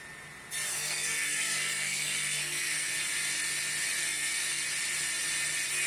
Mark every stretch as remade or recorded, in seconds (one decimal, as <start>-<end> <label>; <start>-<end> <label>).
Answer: 0.0-0.7 recorded; 0.7-2.9 remade; 2.9-4.0 recorded; 4.0-4.6 remade; 4.6-5.9 recorded